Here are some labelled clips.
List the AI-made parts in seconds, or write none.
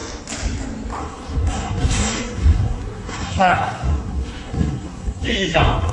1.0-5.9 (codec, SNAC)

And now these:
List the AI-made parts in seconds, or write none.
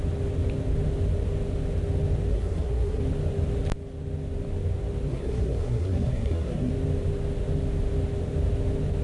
2.3-3.0 (codec, SNAC); 5.1-6.7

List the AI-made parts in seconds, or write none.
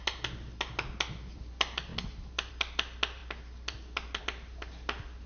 none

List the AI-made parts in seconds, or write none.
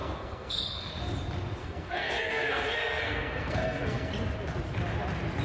0.0-0.9 (codec, SNAC); 1.6-4.1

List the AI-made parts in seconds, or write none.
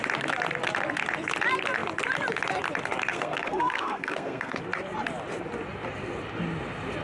3.1-4.6 (codec, SNAC)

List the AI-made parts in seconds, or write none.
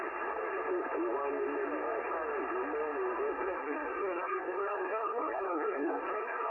3.3-6.5 (codec, SNAC)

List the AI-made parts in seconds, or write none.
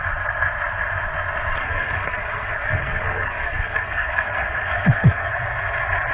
1.6-5.3 (codec, SNAC)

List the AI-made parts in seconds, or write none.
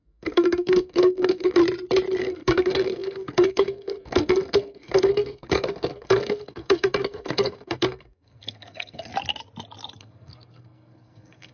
0.0-1.6 (codec, SNAC); 2.2-9.1; 10.0-11.5